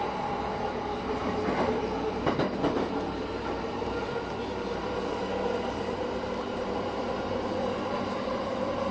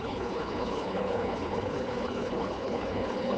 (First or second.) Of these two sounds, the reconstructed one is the second